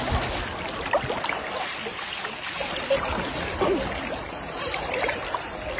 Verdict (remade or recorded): recorded